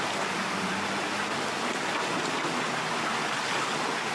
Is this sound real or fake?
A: real